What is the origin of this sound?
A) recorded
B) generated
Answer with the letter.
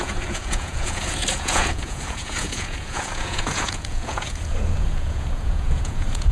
B